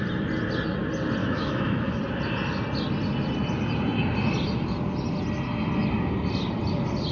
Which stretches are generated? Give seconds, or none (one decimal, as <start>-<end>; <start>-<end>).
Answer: 1.2-2.0